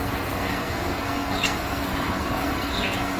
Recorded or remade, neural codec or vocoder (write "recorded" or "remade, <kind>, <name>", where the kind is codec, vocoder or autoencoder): remade, codec, SNAC